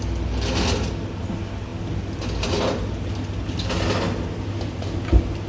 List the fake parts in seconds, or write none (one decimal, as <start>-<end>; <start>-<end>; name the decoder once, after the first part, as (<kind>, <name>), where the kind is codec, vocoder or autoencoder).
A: none